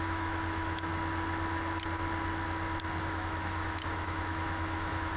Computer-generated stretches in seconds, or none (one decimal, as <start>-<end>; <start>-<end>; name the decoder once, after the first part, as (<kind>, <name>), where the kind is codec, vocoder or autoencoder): 0.0-0.9 (autoencoder, DAC-VAE); 3.0-5.2